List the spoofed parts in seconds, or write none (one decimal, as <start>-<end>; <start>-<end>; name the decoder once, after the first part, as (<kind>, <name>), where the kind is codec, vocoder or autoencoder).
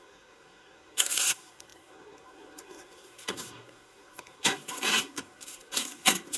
0.0-6.4 (codec, SNAC)